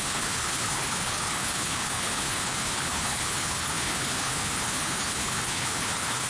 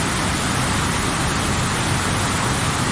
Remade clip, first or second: first